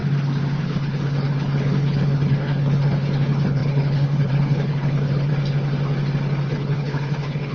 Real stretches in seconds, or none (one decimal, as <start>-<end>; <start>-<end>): 0.0-0.6; 5.3-6.5